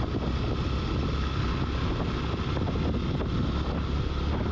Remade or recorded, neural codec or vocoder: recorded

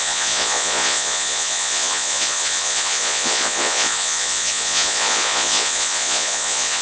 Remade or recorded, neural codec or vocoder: remade, vocoder, Vocos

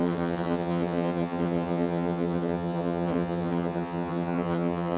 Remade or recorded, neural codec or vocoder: remade, vocoder, HiFi-GAN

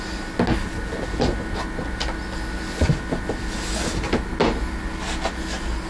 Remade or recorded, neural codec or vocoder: recorded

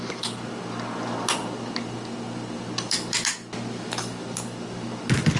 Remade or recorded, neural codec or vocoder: recorded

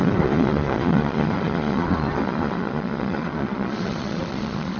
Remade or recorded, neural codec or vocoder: remade, vocoder, Vocos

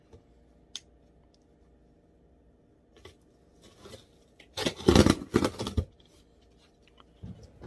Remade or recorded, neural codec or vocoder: recorded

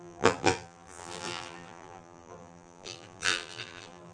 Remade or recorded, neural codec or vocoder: remade, vocoder, BigVGAN v2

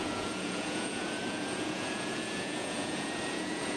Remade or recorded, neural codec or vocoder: remade, vocoder, Vocos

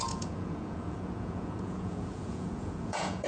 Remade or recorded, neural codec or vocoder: remade, vocoder, Vocos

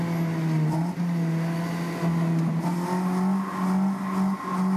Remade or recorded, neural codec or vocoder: recorded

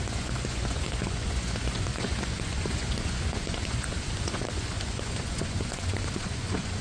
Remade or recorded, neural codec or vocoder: remade, vocoder, Vocos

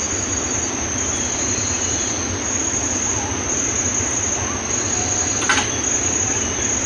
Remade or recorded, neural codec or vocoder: recorded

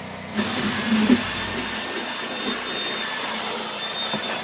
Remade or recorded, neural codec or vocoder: recorded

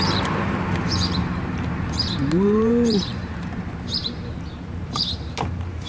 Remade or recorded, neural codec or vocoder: remade, vocoder, BigVGAN v2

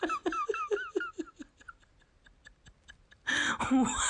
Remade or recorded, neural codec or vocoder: recorded